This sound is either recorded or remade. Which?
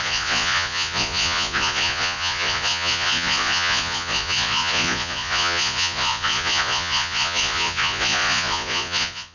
remade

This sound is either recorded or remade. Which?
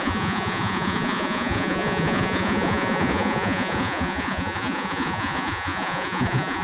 remade